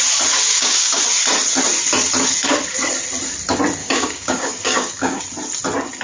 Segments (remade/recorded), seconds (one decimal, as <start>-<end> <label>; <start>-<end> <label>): 0.0-0.5 recorded; 0.5-1.0 remade; 1.0-3.8 recorded; 3.8-5.2 remade; 5.2-6.0 recorded